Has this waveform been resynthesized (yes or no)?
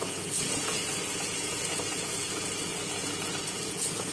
yes